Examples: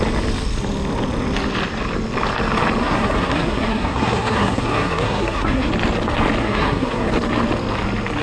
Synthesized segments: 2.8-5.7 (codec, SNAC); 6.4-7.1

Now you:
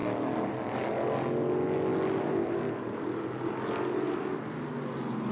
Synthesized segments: none

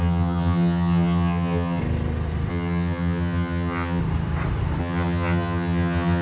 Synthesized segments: 0.0-1.8 (vocoder, HiFi-GAN); 2.5-4.0; 4.8-6.2

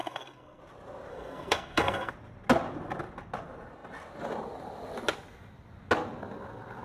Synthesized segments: 0.0-0.6 (codec, SNAC); 1.1-2.1

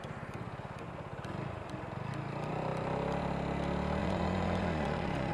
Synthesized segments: 4.0-5.3 (vocoder, Vocos)

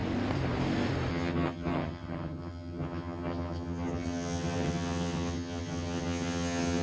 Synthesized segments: 1.1-6.8 (vocoder, HiFi-GAN)